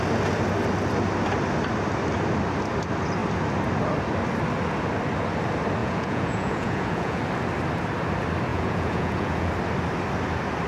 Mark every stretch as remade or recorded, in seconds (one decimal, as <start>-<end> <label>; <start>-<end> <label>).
0.0-5.8 recorded; 5.8-7.2 remade; 7.2-8.5 recorded; 8.5-9.5 remade; 9.5-10.7 recorded